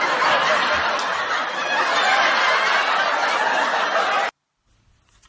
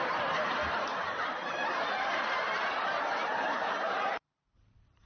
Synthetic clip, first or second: second